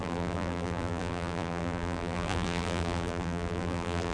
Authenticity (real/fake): fake